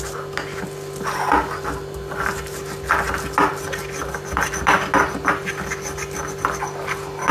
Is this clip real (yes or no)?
yes